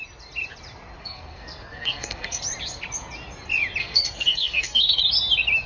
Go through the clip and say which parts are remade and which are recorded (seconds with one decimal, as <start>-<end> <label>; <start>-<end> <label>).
0.0-1.0 recorded; 1.0-2.4 remade; 2.4-3.8 recorded; 3.8-5.0 remade; 5.0-5.7 recorded